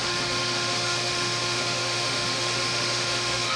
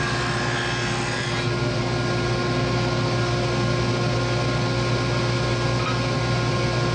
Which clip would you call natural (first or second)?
second